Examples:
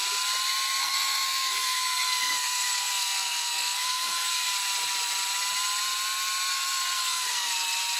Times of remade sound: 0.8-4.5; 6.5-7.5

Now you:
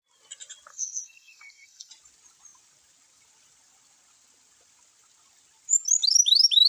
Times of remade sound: 0.7-1.9

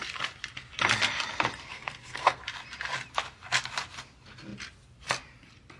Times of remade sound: 1.7-2.4

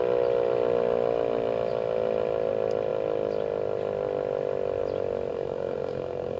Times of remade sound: 5.3-6.4

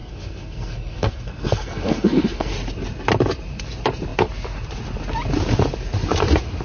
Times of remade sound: 0.0-2.5

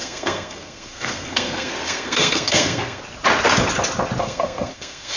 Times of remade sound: 0.0-3.0; 4.2-5.2